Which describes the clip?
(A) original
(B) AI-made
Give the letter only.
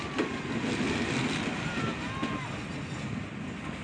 A